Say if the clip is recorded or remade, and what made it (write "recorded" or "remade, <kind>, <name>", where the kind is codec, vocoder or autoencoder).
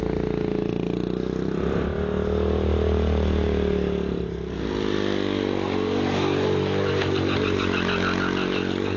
recorded